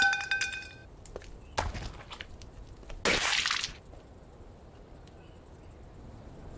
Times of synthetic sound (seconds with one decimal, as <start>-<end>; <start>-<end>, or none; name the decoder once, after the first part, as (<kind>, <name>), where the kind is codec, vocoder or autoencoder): none